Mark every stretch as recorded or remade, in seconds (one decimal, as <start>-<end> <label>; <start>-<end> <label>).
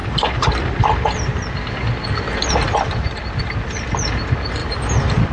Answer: 0.0-4.6 recorded; 4.6-5.3 remade